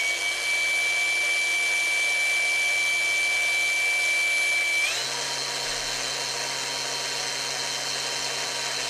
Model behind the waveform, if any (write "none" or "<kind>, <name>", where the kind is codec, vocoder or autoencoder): none